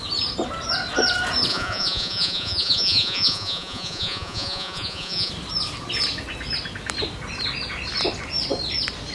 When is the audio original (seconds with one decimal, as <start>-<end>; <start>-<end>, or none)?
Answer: 0.0-1.5; 5.3-9.1